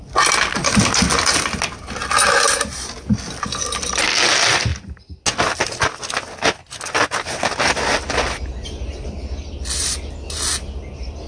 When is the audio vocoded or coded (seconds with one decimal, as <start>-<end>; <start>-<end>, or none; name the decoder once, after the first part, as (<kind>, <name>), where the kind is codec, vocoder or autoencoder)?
none